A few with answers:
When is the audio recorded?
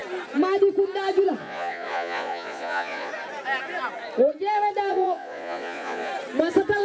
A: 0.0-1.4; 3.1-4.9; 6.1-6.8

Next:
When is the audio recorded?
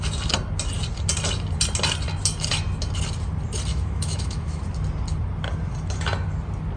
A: 0.0-3.7; 4.6-6.8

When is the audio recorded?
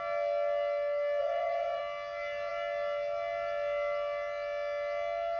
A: 0.0-1.2; 1.8-5.4